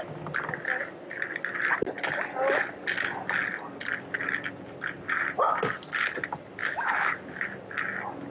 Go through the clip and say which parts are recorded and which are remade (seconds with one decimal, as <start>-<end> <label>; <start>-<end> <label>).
0.0-6.6 recorded; 6.6-7.1 remade; 7.1-8.3 recorded